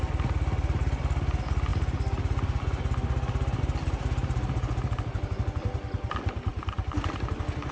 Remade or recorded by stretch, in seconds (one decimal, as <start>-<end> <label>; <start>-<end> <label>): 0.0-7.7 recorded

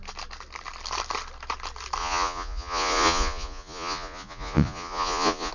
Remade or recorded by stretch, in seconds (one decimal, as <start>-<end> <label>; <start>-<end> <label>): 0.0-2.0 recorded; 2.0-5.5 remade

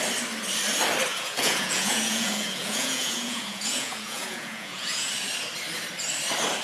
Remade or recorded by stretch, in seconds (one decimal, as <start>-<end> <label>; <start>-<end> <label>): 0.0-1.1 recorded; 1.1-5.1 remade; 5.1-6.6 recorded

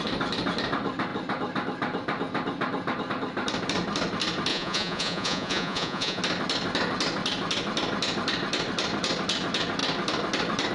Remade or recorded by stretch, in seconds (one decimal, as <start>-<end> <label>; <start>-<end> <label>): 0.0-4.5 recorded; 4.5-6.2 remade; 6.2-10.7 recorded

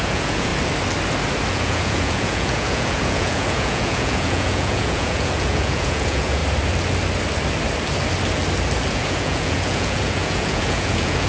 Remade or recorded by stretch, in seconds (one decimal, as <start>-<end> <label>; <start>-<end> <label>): 0.0-0.5 remade; 0.5-1.5 recorded; 1.5-6.4 remade; 6.4-8.9 recorded; 8.9-11.3 remade

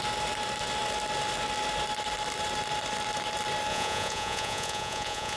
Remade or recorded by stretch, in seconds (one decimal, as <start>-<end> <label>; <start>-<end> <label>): 0.0-3.7 recorded; 3.7-5.4 remade